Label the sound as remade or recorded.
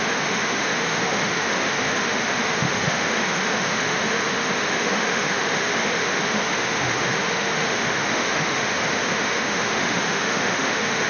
remade